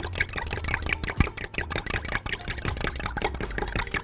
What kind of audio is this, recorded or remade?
recorded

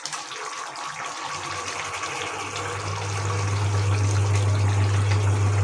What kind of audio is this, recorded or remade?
recorded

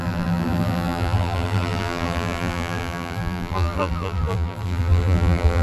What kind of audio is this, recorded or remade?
remade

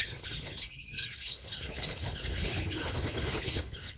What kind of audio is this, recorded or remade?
remade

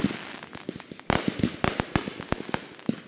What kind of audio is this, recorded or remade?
recorded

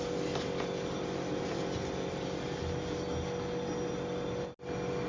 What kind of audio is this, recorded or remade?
recorded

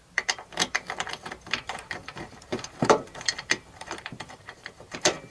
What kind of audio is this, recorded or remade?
remade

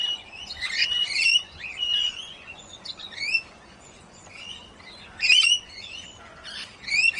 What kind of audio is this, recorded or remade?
remade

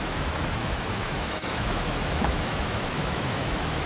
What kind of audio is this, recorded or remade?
remade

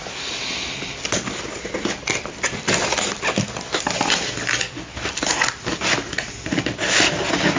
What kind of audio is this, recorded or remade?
recorded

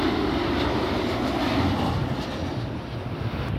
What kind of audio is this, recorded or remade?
recorded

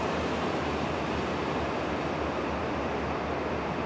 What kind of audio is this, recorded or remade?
recorded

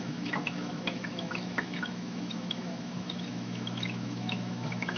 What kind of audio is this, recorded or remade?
remade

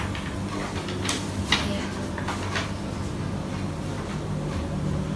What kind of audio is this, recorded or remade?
recorded